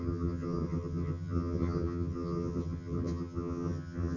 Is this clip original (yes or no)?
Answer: no